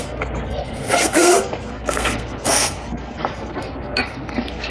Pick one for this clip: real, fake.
fake